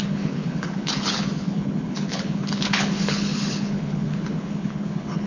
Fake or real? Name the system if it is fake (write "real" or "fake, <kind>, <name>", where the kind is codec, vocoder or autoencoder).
fake, codec, HILCodec